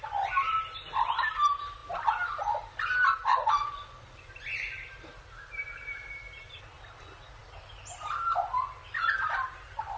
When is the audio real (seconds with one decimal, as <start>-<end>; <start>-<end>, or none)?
0.0-3.3; 4.3-10.0